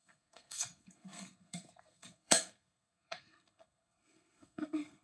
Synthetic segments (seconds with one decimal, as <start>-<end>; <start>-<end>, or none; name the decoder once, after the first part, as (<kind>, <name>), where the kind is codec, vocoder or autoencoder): 0.0-5.0 (codec, SNAC)